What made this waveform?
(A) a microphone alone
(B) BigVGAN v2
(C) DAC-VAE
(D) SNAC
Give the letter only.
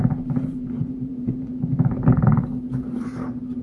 B